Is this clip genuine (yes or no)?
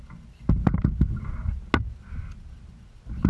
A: yes